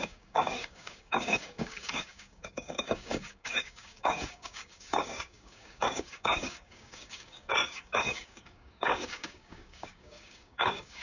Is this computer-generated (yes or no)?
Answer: yes